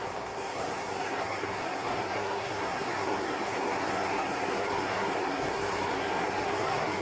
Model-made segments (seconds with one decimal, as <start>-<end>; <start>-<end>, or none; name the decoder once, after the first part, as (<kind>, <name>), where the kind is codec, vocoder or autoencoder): 0.0-7.0 (codec, SNAC)